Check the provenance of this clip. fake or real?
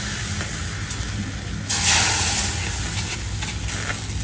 real